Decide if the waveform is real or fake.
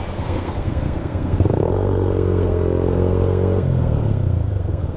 fake